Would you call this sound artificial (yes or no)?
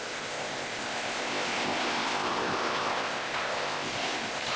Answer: yes